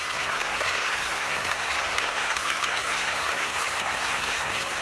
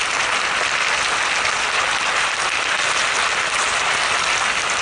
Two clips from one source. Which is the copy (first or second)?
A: first